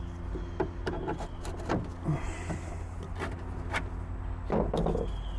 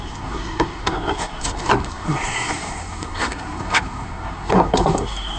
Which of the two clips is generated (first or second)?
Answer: second